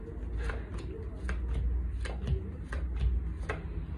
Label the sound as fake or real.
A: real